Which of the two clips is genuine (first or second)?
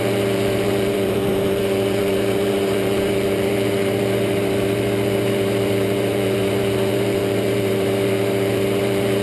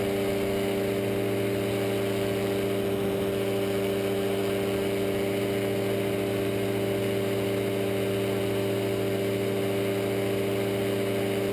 second